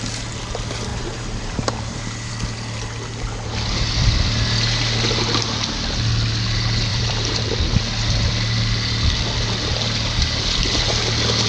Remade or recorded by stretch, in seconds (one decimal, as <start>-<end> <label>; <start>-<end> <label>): 0.0-0.9 recorded; 0.9-2.3 remade; 2.3-6.9 recorded; 6.9-7.4 remade; 7.4-11.5 recorded